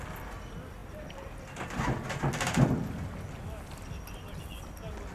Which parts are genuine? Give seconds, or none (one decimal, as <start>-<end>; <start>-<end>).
0.0-5.1